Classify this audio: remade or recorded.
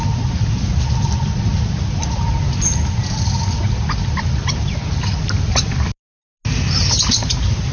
recorded